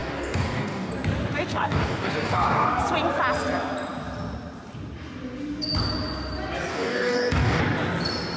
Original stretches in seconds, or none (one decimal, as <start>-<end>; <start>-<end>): 0.9-1.5; 2.8-6.7; 7.6-8.4